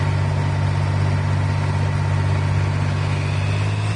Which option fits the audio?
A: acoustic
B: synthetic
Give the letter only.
A